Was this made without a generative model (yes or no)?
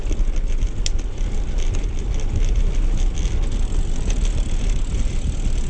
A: yes